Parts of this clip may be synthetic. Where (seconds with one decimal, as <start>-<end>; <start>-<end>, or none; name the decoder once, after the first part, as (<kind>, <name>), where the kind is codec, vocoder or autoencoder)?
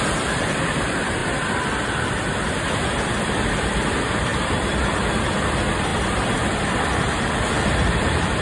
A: 0.0-1.2 (vocoder, BigVGAN v2); 2.0-8.4